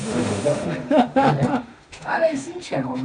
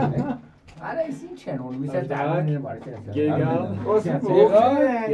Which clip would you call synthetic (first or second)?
first